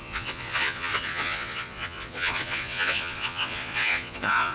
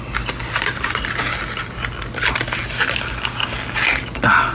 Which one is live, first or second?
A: second